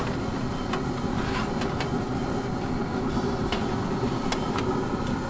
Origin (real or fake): real